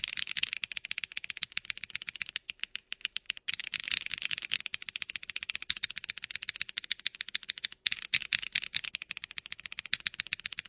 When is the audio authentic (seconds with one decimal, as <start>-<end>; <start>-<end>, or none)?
0.0-2.8; 3.9-10.7